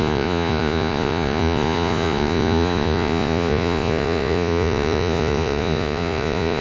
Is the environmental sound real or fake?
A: fake